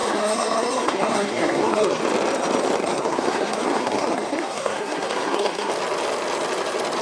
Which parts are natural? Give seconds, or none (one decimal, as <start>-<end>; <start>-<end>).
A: 2.0-2.8; 5.7-7.0